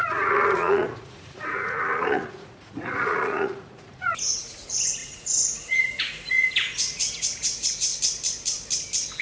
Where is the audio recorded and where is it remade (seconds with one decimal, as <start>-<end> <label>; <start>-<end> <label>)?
0.0-7.9 remade; 7.9-9.2 recorded